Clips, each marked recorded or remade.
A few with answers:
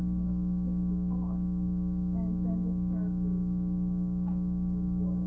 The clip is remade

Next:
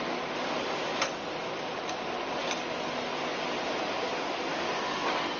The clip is recorded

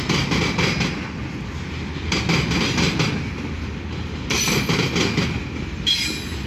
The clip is recorded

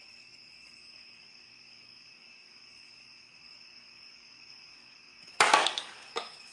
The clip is remade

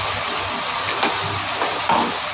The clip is recorded